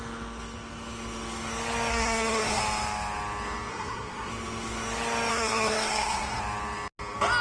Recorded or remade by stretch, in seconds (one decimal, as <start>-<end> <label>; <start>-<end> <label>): 0.0-1.9 recorded; 1.9-2.6 remade; 2.6-3.7 recorded; 3.7-4.3 remade; 4.3-5.3 recorded; 5.3-6.4 remade; 6.4-7.4 recorded

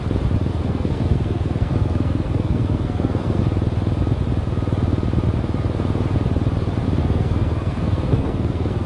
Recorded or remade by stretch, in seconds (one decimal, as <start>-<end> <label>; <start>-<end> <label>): 0.0-0.5 recorded; 0.5-3.4 remade; 3.4-7.0 recorded; 7.0-8.9 remade

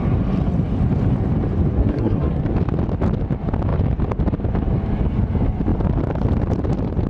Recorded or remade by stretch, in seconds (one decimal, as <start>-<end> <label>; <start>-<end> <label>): 0.0-1.8 recorded; 1.8-2.4 remade; 2.4-7.1 recorded